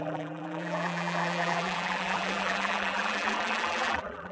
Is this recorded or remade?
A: remade